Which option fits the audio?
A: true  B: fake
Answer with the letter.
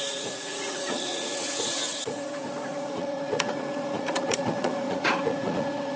B